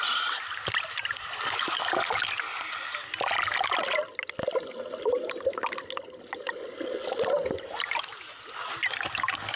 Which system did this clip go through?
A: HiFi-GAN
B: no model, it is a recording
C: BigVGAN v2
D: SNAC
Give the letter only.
B